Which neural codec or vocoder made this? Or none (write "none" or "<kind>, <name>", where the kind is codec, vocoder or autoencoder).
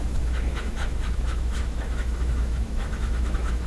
autoencoder, DAC-VAE